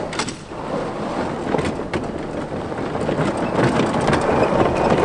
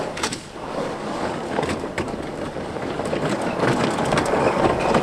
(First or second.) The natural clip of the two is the first